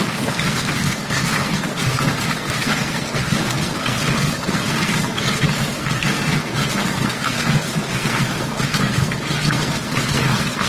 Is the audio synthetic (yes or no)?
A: yes